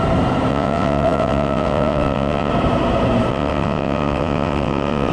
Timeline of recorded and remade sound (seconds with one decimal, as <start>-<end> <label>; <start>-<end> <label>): 0.0-0.5 recorded; 0.5-2.5 remade; 2.5-3.3 recorded; 3.3-5.1 remade